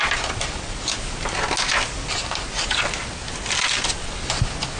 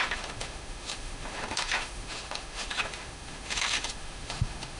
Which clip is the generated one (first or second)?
second